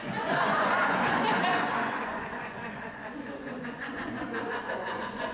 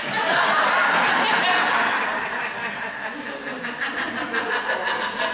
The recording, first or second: second